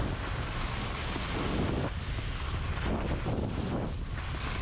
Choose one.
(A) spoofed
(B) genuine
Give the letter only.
B